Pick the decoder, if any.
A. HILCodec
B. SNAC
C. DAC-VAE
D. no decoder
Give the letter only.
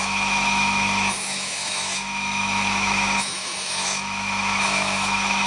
C